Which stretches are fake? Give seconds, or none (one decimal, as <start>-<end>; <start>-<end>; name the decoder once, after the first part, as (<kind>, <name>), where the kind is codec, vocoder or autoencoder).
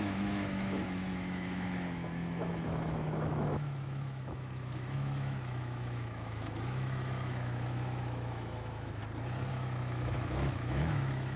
0.0-9.0 (autoencoder, DAC-VAE); 9.5-11.4